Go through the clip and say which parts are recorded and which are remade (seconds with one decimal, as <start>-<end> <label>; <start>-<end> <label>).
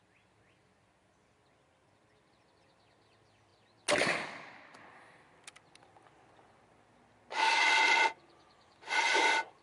0.0-9.6 recorded